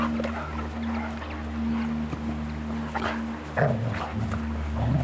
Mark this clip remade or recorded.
recorded